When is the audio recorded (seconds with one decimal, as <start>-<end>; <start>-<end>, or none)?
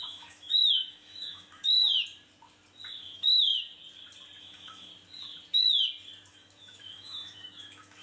1.8-3.0; 3.5-4.4; 4.9-6.3